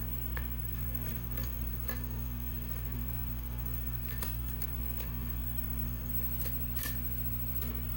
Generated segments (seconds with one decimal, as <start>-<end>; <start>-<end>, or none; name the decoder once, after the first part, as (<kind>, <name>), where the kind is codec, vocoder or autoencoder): 0.0-6.1 (codec, SNAC); 7.6-8.0